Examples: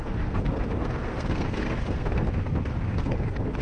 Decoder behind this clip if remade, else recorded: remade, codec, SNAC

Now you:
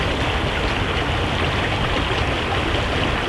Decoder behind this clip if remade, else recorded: recorded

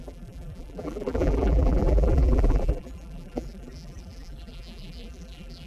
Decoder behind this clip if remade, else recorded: remade, vocoder, BigVGAN v2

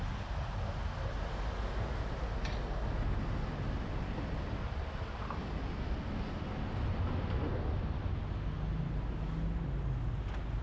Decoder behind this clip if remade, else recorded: recorded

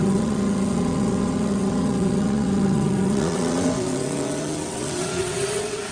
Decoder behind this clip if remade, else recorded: remade, vocoder, WaveNeXt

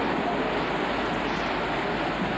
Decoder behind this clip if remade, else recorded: recorded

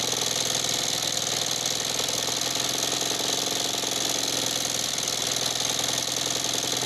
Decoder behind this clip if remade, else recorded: recorded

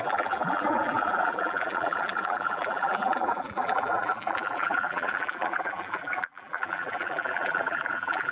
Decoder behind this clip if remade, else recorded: remade, vocoder, BigVGAN v2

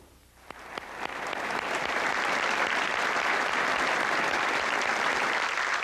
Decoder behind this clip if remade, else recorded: remade, vocoder, BigVGAN v2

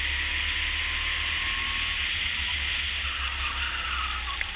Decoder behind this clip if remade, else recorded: recorded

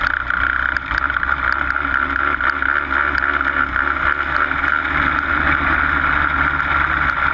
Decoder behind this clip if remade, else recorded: recorded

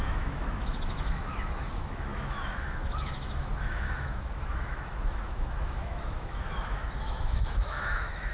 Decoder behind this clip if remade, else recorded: remade, autoencoder, DAC-VAE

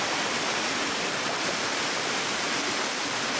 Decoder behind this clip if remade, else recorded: recorded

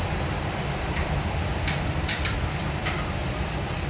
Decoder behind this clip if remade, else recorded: remade, vocoder, BigVGAN v2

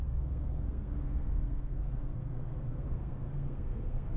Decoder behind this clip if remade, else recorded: remade, codec, SNAC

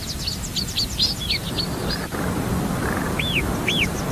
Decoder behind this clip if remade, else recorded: recorded